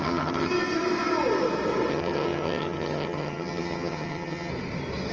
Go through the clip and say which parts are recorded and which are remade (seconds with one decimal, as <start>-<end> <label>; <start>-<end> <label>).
0.0-0.5 remade; 0.5-1.9 recorded; 1.9-4.5 remade; 4.5-5.1 recorded